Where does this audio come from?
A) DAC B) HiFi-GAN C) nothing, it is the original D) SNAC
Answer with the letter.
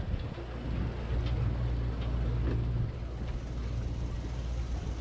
C